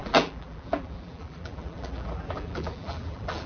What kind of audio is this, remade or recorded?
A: remade